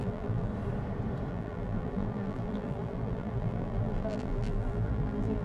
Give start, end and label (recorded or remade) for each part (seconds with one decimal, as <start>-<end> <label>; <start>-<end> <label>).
0.0-0.5 remade; 0.5-1.3 recorded; 1.3-5.4 remade